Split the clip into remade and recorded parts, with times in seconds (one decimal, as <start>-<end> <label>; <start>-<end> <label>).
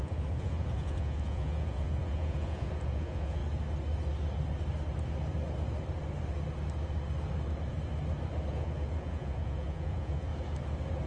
0.0-3.4 remade; 3.4-8.5 recorded; 8.5-10.3 remade; 10.3-11.1 recorded